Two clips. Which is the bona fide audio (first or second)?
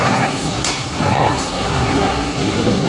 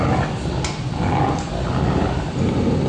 second